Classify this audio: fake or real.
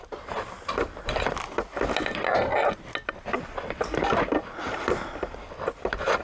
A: real